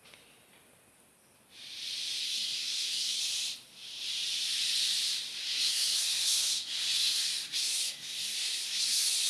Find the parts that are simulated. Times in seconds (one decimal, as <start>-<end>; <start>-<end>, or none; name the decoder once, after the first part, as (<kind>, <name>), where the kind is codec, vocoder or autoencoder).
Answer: 2.2-3.2 (codec, SNAC); 5.4-9.3